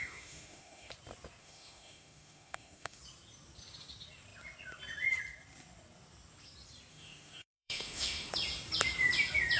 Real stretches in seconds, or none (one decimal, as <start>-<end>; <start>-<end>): 0.9-1.4; 3.0-6.9; 8.3-9.6